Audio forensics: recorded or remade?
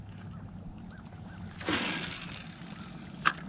recorded